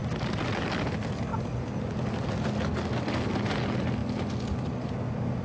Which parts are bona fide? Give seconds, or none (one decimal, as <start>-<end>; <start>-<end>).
0.8-5.4

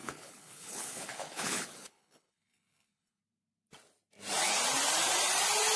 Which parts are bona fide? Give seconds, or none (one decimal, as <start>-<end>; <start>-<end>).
3.2-5.8

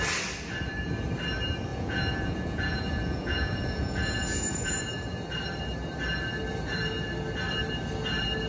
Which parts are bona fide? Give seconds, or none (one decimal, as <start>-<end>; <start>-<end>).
0.0-1.7; 4.8-8.5